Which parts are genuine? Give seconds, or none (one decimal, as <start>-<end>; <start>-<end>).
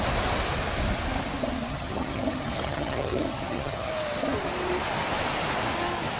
0.0-1.7; 3.9-6.2